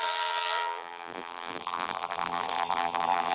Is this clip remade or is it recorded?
remade